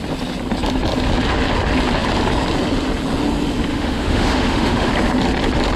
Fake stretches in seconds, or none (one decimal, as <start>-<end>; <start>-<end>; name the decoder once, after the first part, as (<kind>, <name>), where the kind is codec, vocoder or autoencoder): 3.7-4.9 (autoencoder, DAC-VAE)